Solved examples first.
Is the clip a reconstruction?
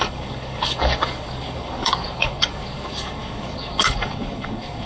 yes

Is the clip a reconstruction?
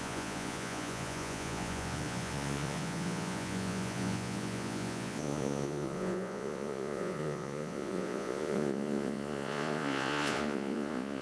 yes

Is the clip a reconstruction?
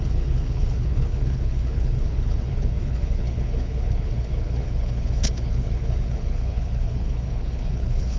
yes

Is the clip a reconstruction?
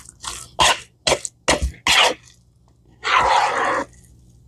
no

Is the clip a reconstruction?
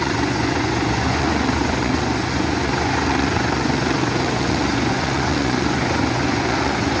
yes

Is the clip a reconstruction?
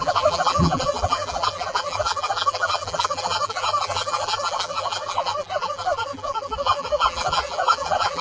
yes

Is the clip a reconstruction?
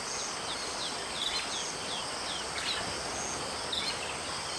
no